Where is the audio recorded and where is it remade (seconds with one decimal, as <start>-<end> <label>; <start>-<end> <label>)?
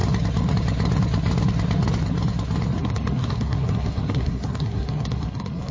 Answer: 0.0-2.8 recorded; 2.8-5.7 remade